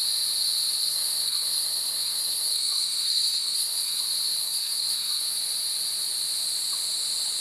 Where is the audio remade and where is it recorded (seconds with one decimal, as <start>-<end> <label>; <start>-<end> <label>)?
0.0-0.9 recorded; 0.9-4.0 remade; 4.0-4.4 recorded; 4.4-5.2 remade; 5.2-7.4 recorded